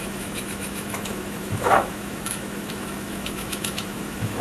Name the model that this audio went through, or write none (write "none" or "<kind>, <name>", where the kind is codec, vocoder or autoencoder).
autoencoder, DAC-VAE